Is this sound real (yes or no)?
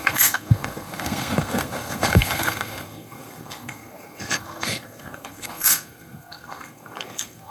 no